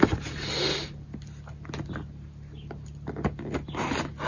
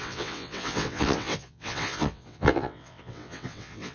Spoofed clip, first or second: second